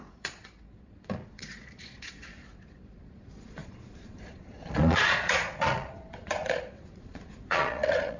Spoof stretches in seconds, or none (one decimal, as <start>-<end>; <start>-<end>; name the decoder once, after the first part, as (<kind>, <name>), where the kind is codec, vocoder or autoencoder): 0.0-8.2 (vocoder, Vocos)